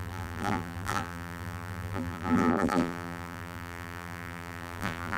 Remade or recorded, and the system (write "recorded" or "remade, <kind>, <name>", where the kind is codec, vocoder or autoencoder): remade, vocoder, BigVGAN v2